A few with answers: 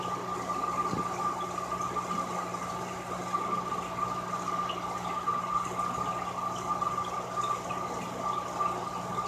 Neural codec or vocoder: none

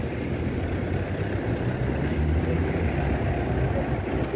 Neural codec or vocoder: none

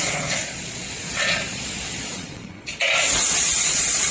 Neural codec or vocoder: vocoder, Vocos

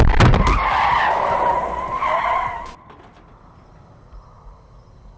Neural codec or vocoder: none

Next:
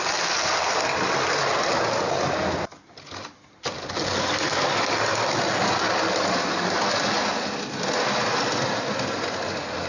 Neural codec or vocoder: none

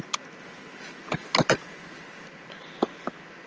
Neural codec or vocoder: none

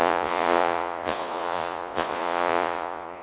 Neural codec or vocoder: vocoder, Vocos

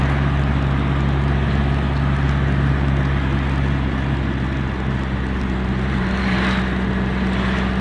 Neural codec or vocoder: none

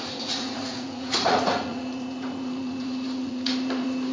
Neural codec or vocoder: vocoder, Vocos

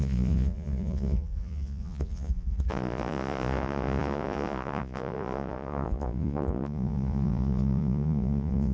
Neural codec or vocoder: vocoder, Vocos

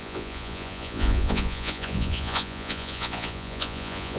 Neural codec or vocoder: vocoder, Vocos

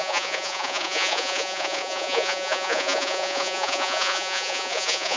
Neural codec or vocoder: vocoder, Vocos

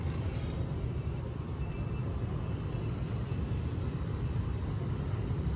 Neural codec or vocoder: none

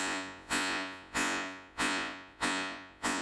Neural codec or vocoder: vocoder, Vocos